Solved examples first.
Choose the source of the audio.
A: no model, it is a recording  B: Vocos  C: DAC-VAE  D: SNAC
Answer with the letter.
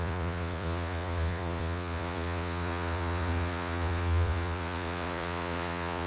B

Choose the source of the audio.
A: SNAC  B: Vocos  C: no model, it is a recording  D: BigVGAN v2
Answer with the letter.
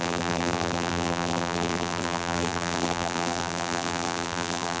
D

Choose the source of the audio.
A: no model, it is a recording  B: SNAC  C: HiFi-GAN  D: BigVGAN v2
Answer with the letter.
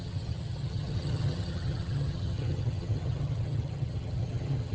C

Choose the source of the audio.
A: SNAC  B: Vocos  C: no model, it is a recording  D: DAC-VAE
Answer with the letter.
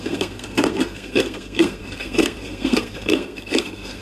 A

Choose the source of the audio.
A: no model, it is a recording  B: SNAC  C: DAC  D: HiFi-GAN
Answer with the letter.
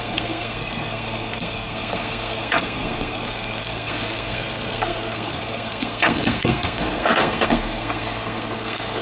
B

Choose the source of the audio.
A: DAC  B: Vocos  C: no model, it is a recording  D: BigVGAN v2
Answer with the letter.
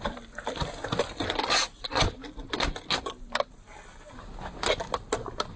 C